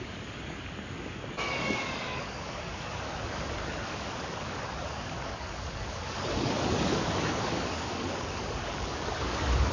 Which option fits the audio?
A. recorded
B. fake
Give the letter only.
B